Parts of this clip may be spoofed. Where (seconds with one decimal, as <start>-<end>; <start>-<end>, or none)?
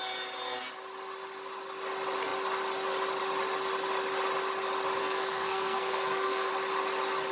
5.0-6.5